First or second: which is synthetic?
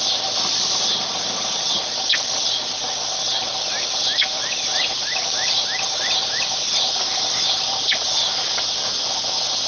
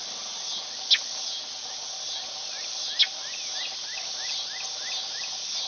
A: first